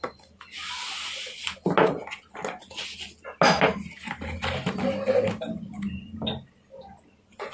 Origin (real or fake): real